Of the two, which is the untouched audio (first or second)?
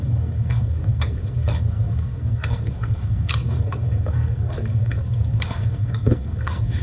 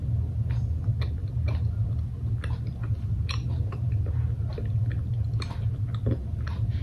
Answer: second